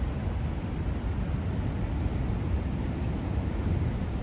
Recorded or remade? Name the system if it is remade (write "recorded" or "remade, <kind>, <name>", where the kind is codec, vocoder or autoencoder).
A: recorded